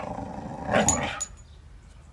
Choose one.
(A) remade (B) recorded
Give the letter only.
B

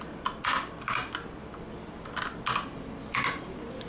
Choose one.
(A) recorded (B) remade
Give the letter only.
A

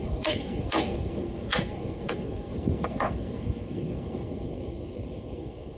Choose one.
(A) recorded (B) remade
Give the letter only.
B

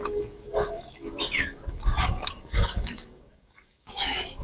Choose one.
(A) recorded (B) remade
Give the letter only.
B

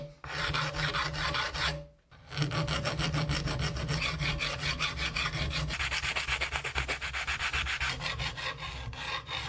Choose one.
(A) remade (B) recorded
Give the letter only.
B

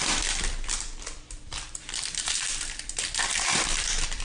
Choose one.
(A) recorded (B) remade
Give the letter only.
B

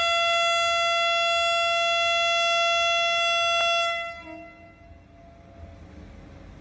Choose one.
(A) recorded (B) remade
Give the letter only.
A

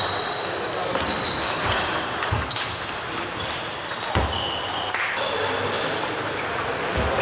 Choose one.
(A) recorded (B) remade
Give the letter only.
A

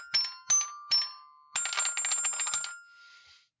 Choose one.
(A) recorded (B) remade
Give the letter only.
A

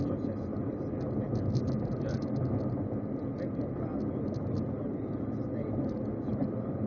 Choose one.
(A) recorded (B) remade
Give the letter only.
A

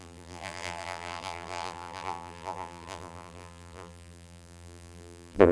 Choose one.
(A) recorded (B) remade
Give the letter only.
B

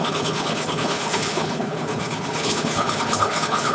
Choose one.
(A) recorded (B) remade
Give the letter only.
B